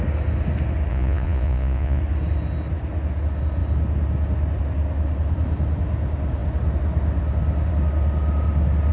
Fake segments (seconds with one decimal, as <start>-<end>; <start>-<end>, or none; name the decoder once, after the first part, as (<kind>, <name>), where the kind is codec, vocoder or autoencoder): 0.9-2.0 (vocoder, Vocos)